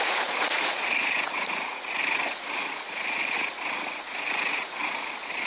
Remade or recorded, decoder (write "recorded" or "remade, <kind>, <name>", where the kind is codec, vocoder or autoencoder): remade, vocoder, Vocos